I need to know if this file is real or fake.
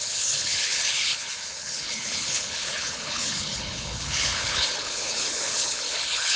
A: fake